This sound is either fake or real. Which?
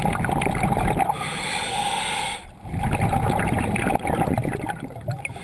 real